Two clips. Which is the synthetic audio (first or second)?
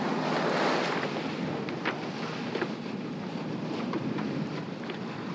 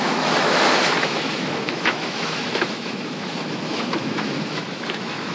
second